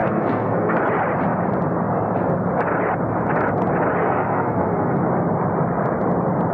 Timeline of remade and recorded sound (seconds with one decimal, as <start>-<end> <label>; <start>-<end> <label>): 0.0-0.8 remade; 0.8-4.0 recorded; 4.0-5.0 remade; 5.0-6.5 recorded

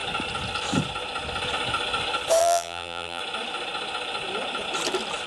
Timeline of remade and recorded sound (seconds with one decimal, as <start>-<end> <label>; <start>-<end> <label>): 0.0-2.4 recorded; 2.4-3.2 remade; 3.2-5.3 recorded

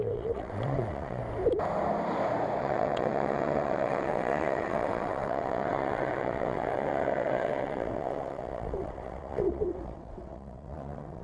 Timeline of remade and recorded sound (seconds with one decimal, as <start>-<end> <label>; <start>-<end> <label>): 0.0-1.2 remade; 1.2-2.6 recorded; 2.6-11.2 remade

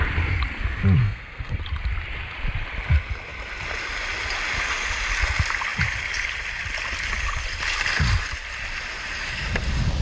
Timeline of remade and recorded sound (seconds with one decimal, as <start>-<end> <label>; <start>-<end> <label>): 0.0-1.0 recorded; 1.0-1.6 remade; 1.6-10.0 recorded